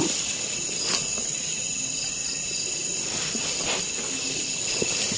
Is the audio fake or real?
real